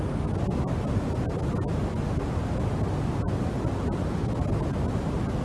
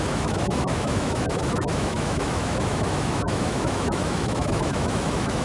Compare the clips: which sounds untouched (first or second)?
first